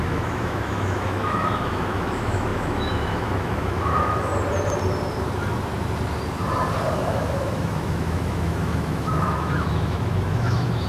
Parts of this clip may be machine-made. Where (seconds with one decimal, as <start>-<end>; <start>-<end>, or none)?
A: 0.0-4.3; 6.9-10.9